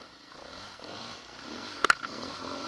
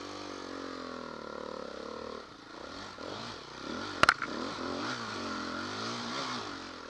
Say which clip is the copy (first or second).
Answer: first